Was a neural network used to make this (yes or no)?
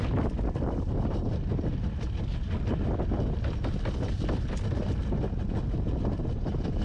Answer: no